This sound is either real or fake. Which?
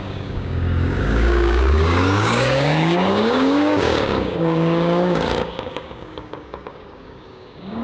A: fake